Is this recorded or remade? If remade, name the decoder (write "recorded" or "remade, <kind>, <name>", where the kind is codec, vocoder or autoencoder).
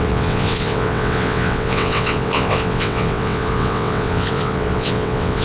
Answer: remade, vocoder, WaveNeXt